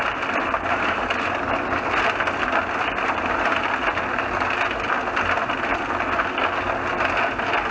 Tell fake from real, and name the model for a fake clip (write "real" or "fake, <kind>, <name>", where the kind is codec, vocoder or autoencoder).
real